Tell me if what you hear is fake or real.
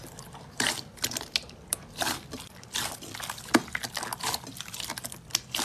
real